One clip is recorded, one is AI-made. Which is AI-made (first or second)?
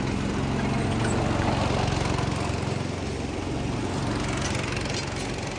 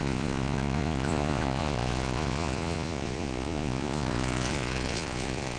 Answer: second